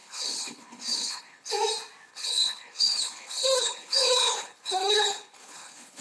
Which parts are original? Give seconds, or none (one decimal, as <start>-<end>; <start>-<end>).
1.5-2.1